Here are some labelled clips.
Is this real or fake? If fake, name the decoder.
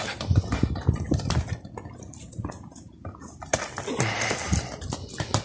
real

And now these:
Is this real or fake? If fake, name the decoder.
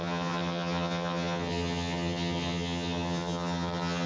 fake, vocoder, HiFi-GAN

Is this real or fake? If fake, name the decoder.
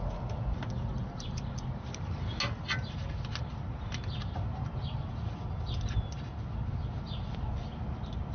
real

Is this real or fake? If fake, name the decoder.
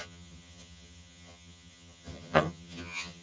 fake, vocoder, HiFi-GAN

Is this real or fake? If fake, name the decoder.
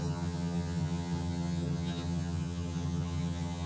fake, vocoder, HiFi-GAN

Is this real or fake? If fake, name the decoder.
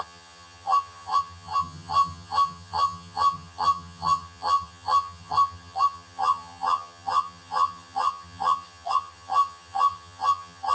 fake, vocoder, HiFi-GAN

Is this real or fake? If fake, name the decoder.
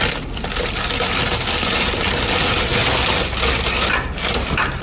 real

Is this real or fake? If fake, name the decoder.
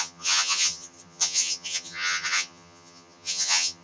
fake, vocoder, HiFi-GAN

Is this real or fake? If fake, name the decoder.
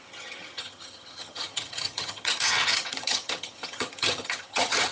fake, vocoder, HiFi-GAN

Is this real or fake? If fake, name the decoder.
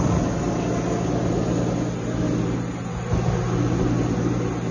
real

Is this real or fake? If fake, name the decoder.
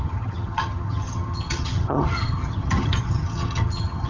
fake, vocoder, HiFi-GAN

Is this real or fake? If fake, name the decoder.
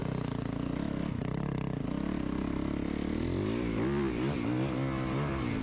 real